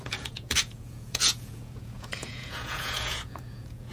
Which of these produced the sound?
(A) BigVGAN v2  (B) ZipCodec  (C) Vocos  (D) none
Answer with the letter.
C